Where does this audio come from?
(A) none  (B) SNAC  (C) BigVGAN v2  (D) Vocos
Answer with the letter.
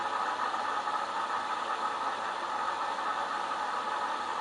C